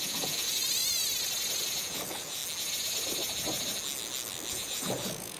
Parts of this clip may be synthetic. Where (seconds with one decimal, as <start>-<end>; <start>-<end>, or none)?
0.0-0.6; 1.6-2.4; 4.5-5.4

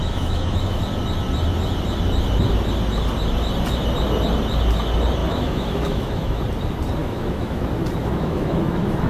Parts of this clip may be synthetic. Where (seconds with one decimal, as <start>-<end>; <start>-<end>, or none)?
0.0-0.8; 5.2-6.4; 7.0-7.6; 8.0-9.1

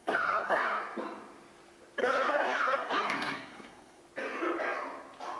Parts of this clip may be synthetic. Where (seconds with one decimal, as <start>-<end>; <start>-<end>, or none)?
0.0-0.8; 2.0-4.0